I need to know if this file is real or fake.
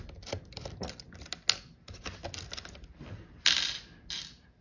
real